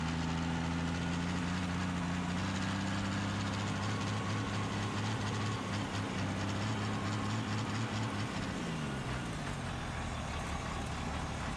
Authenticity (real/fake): real